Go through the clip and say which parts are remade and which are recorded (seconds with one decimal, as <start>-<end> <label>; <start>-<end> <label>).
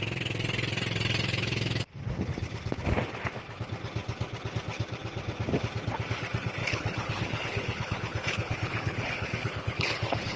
0.0-6.6 recorded; 6.6-10.4 remade